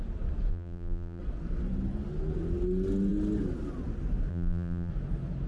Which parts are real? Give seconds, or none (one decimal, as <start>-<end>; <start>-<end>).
0.0-0.5; 1.2-4.3; 4.9-5.5